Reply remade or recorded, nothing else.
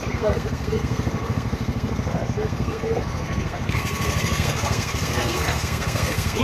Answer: remade